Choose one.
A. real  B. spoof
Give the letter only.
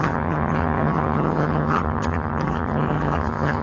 B